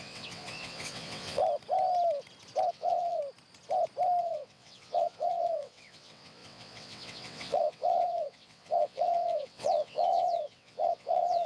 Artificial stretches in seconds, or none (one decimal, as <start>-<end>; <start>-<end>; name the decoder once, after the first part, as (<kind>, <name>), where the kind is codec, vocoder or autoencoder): 0.0-1.4 (vocoder, WaveNeXt); 2.7-3.2; 4.2-11.5